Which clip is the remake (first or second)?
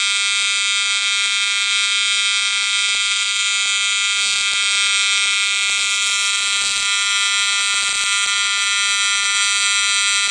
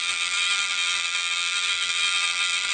second